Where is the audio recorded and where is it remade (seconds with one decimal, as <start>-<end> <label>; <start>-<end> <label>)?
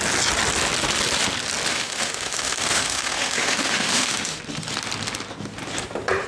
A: 0.0-1.7 recorded; 1.7-4.4 remade; 4.4-6.3 recorded